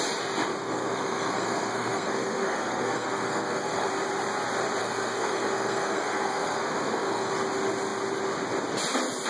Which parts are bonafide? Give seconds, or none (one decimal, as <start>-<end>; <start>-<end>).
0.0-0.6; 3.9-4.8; 7.3-9.3